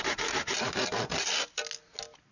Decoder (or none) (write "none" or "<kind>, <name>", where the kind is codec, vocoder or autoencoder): none